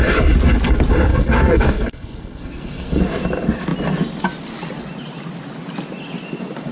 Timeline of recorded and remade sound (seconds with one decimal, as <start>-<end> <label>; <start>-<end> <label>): 0.0-1.1 recorded; 1.1-3.0 remade; 3.0-6.7 recorded